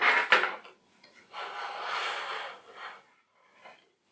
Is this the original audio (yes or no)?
yes